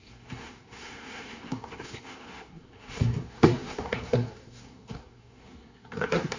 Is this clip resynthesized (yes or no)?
yes